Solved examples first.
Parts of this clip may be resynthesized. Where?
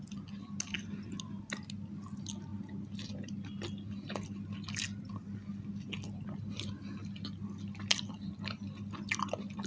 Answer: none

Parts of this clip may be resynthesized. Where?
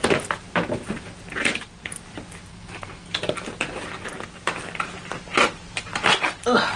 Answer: 2.5-3.1 (codec, SNAC)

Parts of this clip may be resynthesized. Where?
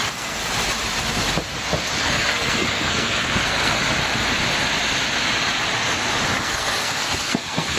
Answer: 0.0-0.4 (codec, SNAC); 2.0-3.8; 6.4-7.8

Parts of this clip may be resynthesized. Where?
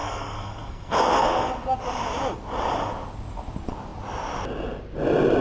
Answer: 0.0-1.5 (codec, SNAC)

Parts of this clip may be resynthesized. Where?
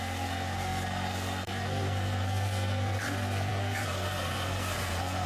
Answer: 0.0-5.3 (codec, SNAC)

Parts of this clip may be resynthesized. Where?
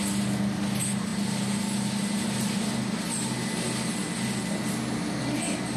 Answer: none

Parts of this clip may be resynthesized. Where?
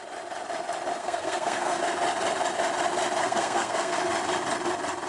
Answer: 1.0-1.8 (codec, SNAC); 3.2-4.0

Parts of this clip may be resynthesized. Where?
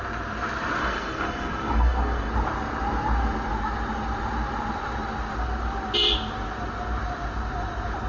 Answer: 0.8-2.3 (codec, SNAC)